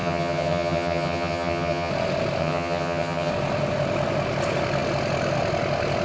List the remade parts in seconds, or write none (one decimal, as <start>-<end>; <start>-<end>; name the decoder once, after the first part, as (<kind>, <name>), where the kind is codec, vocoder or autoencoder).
0.0-1.9 (vocoder, HiFi-GAN); 2.4-3.3